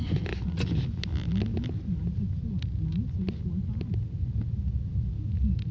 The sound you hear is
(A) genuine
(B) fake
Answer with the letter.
A